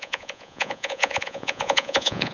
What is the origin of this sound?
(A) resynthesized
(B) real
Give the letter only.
A